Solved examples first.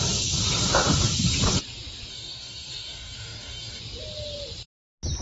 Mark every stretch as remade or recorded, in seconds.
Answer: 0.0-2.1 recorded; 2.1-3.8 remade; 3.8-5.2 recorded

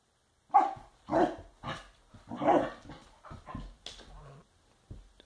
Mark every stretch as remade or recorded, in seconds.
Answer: 0.0-5.3 recorded

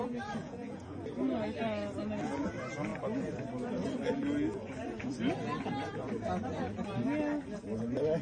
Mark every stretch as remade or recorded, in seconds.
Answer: 0.0-0.4 recorded; 0.4-1.0 remade; 1.0-8.2 recorded

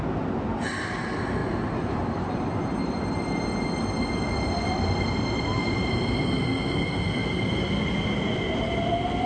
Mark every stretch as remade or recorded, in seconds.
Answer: 0.0-1.4 recorded; 1.4-2.3 remade; 2.3-5.5 recorded; 5.5-6.0 remade; 6.0-7.2 recorded; 7.2-8.9 remade; 8.9-9.3 recorded

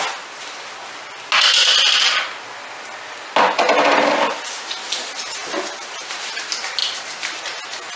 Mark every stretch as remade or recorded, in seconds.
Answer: 0.0-8.0 recorded